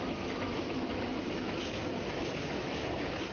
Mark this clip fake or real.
fake